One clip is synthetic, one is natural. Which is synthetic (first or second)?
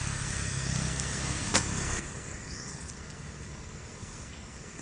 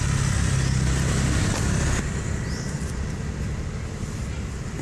first